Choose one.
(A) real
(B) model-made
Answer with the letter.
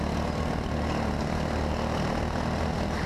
A